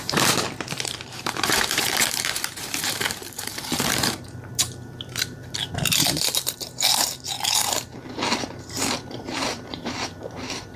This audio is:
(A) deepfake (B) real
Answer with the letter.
A